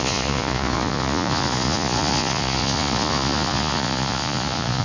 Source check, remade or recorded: remade